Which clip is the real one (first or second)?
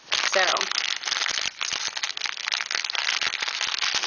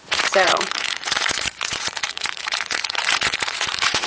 first